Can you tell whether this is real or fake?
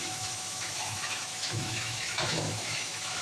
fake